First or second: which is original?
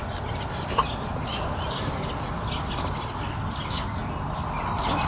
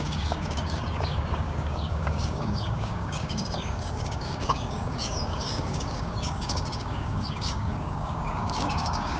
first